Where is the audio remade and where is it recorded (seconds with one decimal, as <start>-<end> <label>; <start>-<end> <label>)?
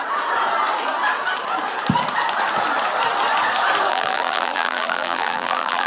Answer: 0.0-3.9 recorded; 3.9-5.9 remade